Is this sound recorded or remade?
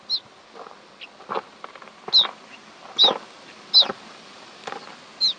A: recorded